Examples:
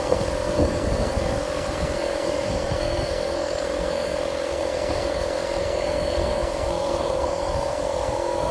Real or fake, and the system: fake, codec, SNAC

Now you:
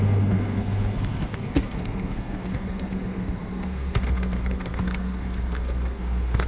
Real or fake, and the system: fake, codec, SNAC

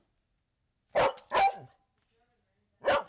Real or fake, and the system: real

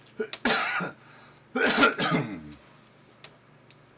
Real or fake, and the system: real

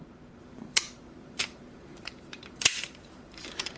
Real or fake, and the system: fake, vocoder, BigVGAN v2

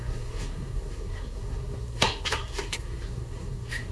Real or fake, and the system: fake, codec, SNAC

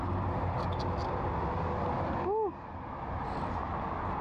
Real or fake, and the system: real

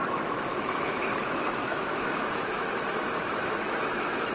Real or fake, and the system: fake, autoencoder, DAC-VAE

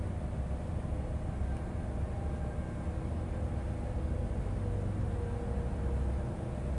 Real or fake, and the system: real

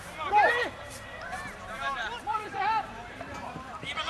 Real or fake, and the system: fake, vocoder, BigVGAN v2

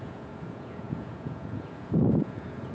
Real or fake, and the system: fake, vocoder, Vocos